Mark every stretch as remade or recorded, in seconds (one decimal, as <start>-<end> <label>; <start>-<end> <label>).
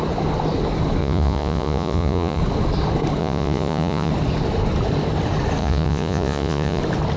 0.0-1.0 recorded; 1.0-2.4 remade; 2.4-3.2 recorded; 3.2-4.1 remade; 4.1-5.6 recorded; 5.6-6.8 remade; 6.8-7.2 recorded